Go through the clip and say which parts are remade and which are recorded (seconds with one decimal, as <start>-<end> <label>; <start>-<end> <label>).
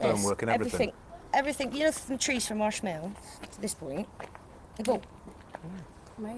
0.0-6.4 recorded